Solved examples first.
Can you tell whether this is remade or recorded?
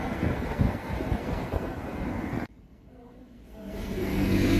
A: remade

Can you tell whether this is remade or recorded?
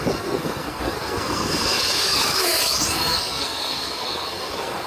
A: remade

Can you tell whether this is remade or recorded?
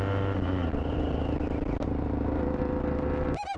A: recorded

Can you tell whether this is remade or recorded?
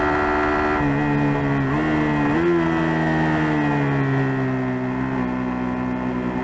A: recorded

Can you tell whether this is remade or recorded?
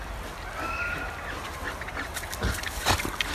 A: recorded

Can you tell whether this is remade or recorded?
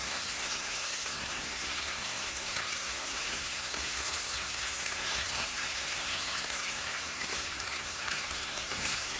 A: remade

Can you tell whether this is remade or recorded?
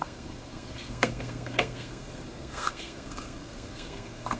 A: remade